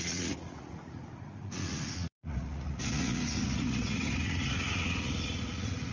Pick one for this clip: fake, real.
fake